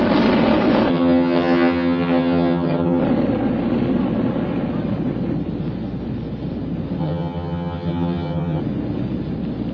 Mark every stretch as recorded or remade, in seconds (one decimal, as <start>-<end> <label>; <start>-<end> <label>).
0.0-0.9 recorded; 0.9-3.0 remade; 3.0-7.0 recorded; 7.0-8.6 remade; 8.6-9.7 recorded